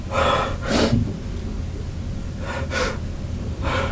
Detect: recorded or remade recorded